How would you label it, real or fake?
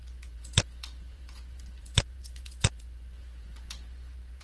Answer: fake